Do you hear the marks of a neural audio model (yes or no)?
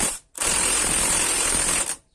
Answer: yes